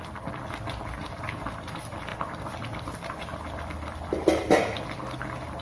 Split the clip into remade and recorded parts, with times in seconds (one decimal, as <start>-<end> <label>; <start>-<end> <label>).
0.0-3.3 recorded; 3.3-4.7 remade; 4.7-5.6 recorded